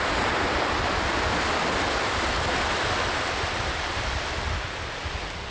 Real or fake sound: real